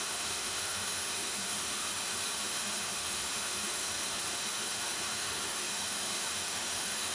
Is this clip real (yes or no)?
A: no